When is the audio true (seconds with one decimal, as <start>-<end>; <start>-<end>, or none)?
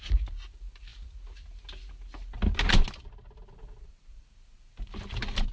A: 0.0-5.5